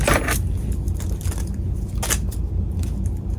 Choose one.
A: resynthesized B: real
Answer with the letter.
B